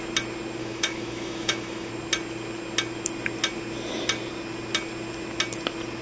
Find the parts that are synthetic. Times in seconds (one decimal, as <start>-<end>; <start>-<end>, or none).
0.6-1.9